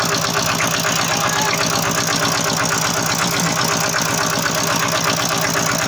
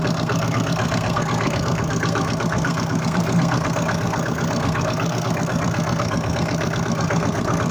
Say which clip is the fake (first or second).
second